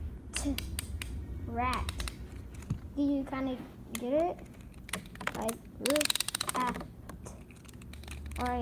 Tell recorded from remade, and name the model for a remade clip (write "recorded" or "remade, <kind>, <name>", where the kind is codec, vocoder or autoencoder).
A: recorded